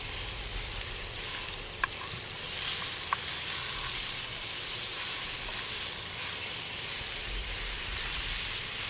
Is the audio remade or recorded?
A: recorded